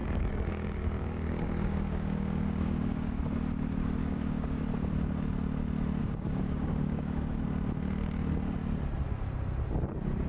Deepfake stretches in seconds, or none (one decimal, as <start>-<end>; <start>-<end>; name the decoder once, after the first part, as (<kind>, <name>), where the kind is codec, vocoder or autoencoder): 0.0-3.2 (codec, DAC); 4.0-4.6; 6.0-7.4